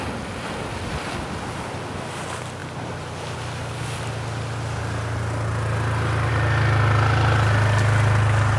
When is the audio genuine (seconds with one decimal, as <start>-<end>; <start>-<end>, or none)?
0.0-8.6

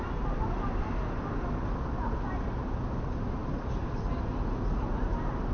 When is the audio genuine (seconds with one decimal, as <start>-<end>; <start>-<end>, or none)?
0.0-5.5